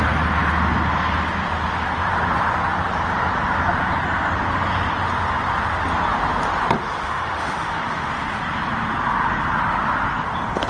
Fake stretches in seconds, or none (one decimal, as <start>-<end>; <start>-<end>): 6.8-8.1